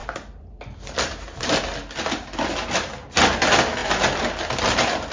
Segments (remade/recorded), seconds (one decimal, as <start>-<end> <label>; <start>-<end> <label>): 0.0-5.1 recorded